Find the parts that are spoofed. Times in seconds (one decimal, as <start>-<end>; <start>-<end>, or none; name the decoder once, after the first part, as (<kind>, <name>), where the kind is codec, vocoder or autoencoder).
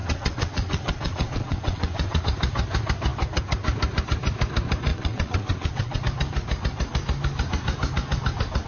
0.0-2.2 (vocoder, WaveNeXt); 4.9-6.0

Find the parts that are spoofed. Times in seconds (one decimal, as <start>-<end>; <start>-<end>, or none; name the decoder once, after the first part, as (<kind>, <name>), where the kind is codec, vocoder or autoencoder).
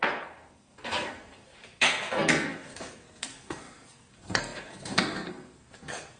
0.0-6.2 (codec, SNAC)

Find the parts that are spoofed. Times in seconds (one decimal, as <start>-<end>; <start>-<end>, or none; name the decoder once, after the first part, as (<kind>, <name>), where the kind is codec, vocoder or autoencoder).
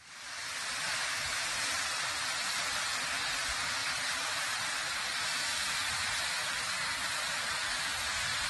1.9-2.4 (vocoder, BigVGAN v2)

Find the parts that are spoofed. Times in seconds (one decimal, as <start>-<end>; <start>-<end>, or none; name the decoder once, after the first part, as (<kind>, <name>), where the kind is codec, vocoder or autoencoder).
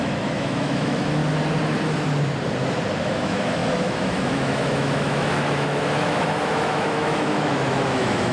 0.0-1.2 (autoencoder, DAC-VAE); 3.0-8.3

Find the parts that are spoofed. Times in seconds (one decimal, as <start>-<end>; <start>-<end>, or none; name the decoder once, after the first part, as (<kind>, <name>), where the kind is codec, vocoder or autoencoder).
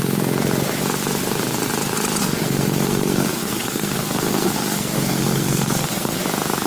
2.2-6.2 (codec, SNAC)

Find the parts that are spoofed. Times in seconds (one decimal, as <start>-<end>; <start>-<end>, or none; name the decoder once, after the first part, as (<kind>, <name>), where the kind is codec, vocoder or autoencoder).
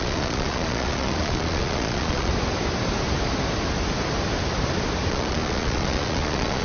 0.0-2.3 (vocoder, Vocos); 5.1-6.6